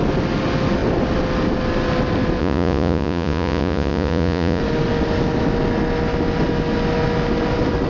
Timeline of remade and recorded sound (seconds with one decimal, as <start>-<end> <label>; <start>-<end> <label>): 0.0-2.4 recorded; 2.4-4.6 remade; 4.6-7.9 recorded